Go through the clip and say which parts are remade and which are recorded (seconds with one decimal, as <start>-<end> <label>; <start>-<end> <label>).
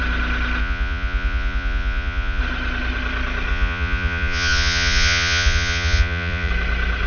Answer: 0.0-0.6 recorded; 0.6-2.4 remade; 2.4-3.5 recorded; 3.5-6.5 remade; 6.5-7.1 recorded